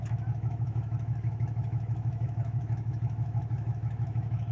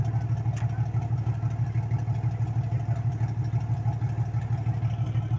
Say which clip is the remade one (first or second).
first